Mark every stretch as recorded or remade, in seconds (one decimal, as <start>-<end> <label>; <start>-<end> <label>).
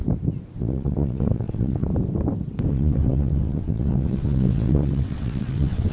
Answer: 0.0-0.6 recorded; 0.6-1.9 remade; 1.9-2.7 recorded; 2.7-5.9 remade